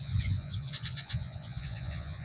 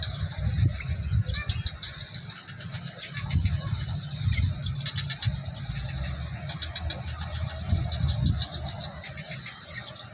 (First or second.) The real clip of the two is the second